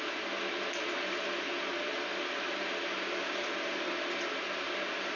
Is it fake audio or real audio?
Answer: real